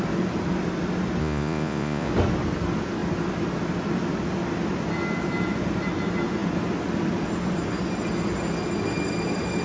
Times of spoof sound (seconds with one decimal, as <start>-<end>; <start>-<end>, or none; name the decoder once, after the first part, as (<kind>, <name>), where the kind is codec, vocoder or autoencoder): 1.2-2.1 (vocoder, Vocos)